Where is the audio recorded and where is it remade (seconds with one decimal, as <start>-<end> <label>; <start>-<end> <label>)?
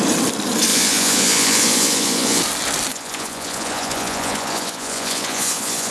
0.0-0.7 recorded; 0.7-2.4 remade; 2.4-2.9 recorded; 2.9-5.9 remade